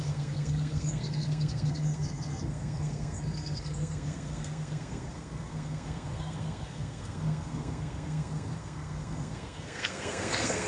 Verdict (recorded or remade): remade